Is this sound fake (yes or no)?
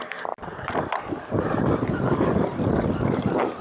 no